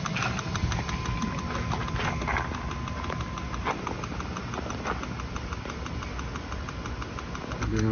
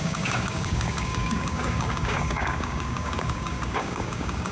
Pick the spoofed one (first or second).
second